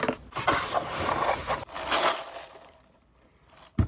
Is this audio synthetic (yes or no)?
no